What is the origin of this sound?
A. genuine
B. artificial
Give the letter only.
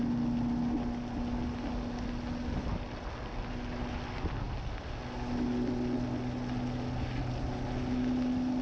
A